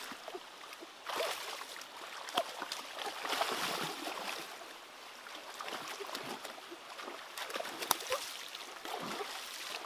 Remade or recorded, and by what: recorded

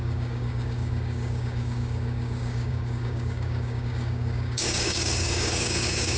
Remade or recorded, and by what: remade, codec, DAC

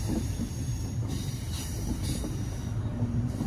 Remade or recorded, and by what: remade, vocoder, BigVGAN v2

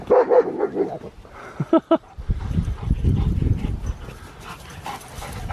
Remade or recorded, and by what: recorded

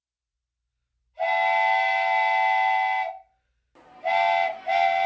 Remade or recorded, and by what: recorded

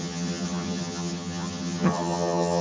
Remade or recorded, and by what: remade, vocoder, HiFi-GAN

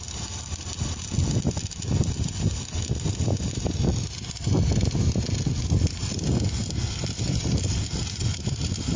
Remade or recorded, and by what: recorded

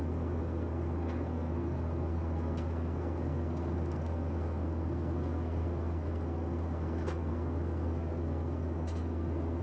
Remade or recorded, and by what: remade, codec, SNAC